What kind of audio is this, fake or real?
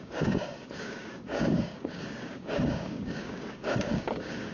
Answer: fake